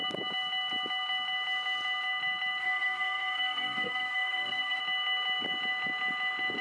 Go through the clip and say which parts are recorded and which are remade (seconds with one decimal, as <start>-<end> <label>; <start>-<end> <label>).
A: 0.0-2.6 recorded; 2.6-4.8 remade; 4.8-6.6 recorded